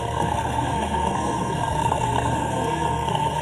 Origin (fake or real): fake